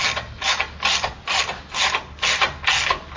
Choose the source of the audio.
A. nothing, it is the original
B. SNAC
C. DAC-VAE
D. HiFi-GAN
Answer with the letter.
A